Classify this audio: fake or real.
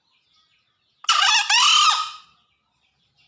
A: real